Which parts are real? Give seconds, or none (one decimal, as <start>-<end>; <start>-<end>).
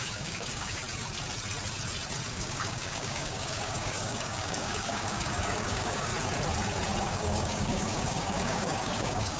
0.8-2.3; 6.1-7.0